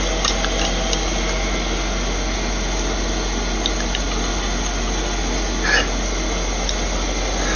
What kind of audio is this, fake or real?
real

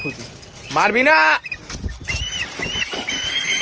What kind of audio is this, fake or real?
real